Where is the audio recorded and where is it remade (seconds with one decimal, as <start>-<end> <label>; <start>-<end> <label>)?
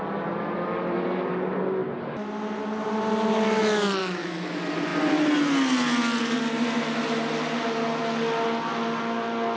0.0-4.0 recorded; 4.0-4.5 remade; 4.5-9.6 recorded